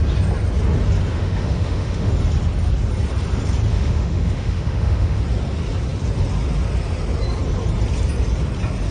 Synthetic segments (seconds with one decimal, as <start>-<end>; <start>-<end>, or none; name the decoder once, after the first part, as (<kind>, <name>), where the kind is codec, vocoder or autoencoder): 1.1-2.1 (autoencoder, DAC-VAE); 3.7-5.2